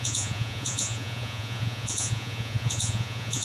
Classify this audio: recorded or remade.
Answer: remade